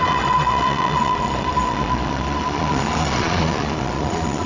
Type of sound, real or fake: fake